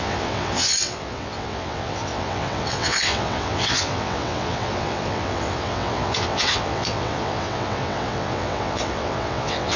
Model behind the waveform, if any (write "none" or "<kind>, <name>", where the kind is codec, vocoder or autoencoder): vocoder, WaveNeXt